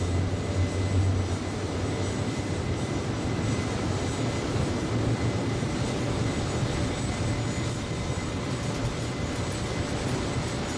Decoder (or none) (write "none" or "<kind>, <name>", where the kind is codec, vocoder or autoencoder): none